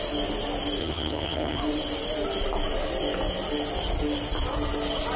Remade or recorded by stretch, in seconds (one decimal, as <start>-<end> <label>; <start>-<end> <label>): 0.0-0.8 recorded; 0.8-1.6 remade; 1.6-5.2 recorded